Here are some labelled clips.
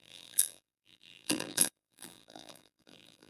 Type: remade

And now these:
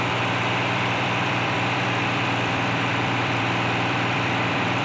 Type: remade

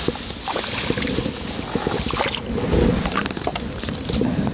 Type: recorded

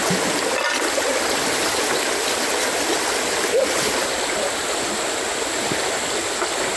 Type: recorded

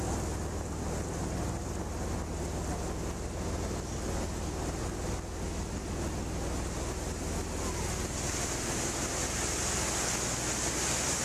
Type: recorded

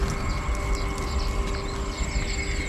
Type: recorded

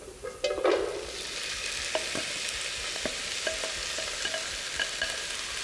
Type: recorded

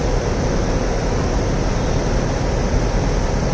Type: recorded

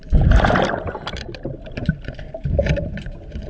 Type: remade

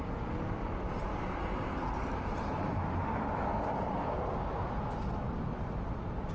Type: recorded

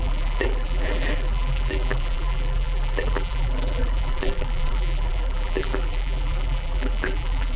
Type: remade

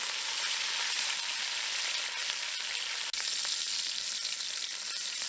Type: recorded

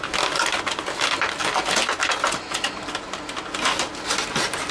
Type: recorded